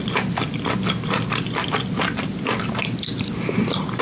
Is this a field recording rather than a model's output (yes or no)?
yes